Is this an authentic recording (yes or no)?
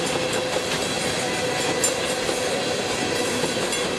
yes